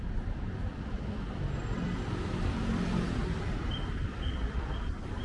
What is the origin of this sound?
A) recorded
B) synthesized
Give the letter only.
B